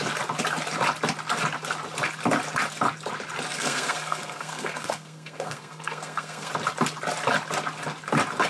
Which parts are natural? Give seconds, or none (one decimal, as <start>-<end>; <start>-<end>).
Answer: 0.0-3.5; 6.5-8.5